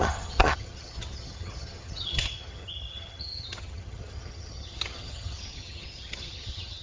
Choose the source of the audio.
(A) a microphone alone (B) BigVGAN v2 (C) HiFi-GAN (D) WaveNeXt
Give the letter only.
C